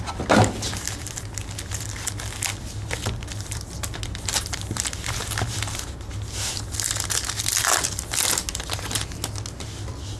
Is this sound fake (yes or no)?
no